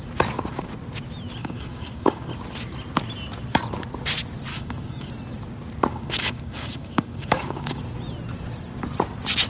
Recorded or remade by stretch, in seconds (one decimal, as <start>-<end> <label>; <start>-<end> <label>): 0.0-1.4 recorded; 1.4-2.3 remade; 2.3-4.5 recorded; 4.5-5.1 remade; 5.1-5.9 recorded; 5.9-7.8 remade; 7.8-9.5 recorded